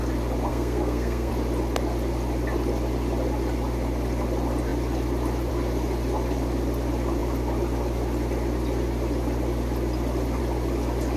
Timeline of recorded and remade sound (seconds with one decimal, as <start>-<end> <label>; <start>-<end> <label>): 0.0-0.5 recorded; 0.5-1.3 remade; 1.3-11.2 recorded